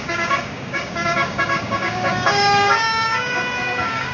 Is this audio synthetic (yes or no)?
yes